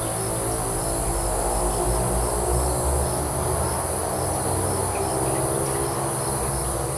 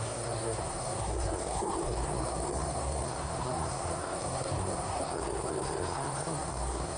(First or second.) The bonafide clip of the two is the first